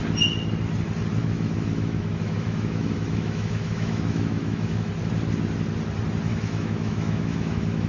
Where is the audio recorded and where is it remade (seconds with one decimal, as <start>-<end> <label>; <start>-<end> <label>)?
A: 0.0-1.2 recorded; 1.2-4.9 remade; 4.9-6.3 recorded; 6.3-7.9 remade